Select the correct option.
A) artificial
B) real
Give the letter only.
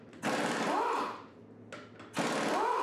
B